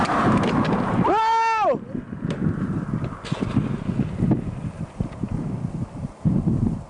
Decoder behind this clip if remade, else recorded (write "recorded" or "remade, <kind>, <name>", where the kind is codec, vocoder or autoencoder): recorded